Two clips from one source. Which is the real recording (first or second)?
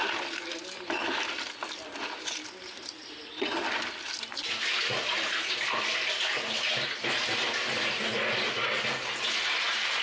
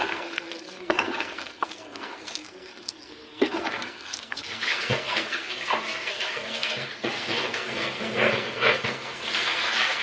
first